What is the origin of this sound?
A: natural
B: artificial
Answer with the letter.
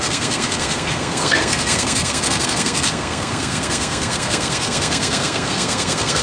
B